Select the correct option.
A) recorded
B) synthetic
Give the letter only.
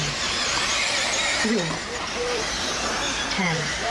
B